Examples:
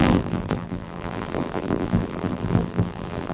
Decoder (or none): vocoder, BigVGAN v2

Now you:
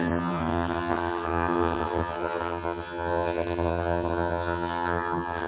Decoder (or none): vocoder, HiFi-GAN